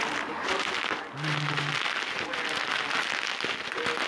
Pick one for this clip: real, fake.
real